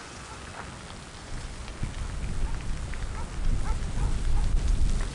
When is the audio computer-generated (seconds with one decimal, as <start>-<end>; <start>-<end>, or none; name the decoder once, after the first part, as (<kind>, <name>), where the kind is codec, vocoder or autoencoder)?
0.0-0.5 (vocoder, Vocos); 1.2-1.7